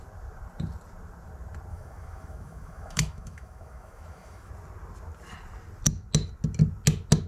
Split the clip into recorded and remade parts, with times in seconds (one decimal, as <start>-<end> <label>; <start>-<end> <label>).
0.0-1.7 recorded; 1.7-4.5 remade; 4.5-7.3 recorded